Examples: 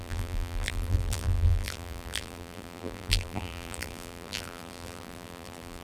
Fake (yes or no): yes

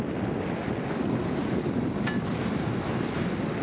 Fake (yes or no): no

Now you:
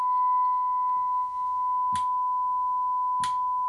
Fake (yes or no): no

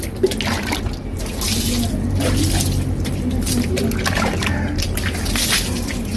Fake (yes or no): no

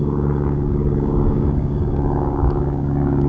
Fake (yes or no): yes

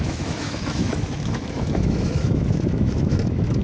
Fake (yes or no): yes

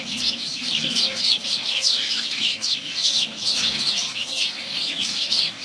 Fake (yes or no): yes